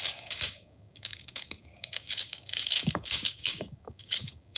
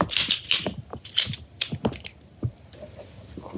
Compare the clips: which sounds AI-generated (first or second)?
first